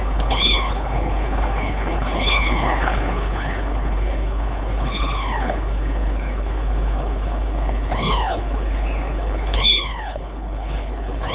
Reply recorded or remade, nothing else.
remade